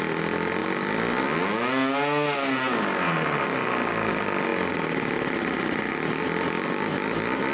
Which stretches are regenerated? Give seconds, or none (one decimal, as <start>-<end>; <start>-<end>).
none